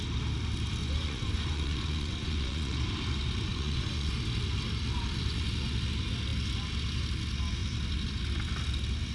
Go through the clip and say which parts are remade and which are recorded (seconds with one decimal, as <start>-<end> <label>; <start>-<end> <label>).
0.0-0.8 recorded; 0.8-2.8 remade; 2.8-3.5 recorded; 3.5-4.1 remade; 4.1-9.1 recorded